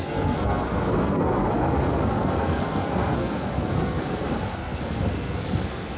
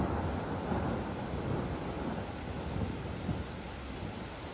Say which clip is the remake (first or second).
first